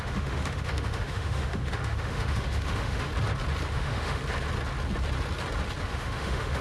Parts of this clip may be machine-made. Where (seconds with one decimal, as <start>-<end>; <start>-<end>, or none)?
0.0-3.1; 3.7-4.2; 5.9-6.6